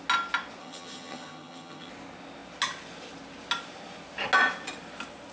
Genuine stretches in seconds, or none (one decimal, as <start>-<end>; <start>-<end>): 0.0-0.6; 1.9-5.3